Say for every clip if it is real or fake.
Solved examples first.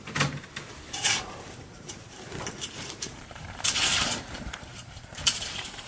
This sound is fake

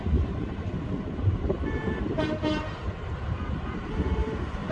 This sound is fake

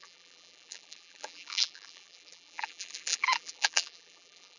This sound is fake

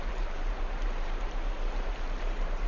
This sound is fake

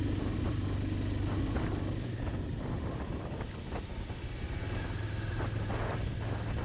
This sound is real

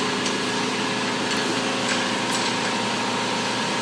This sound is real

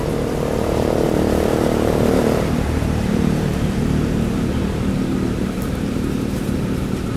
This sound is fake